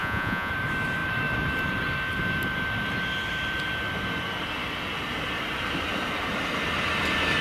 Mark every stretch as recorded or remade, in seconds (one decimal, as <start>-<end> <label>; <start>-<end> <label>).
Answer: 0.0-0.5 remade; 0.5-7.4 recorded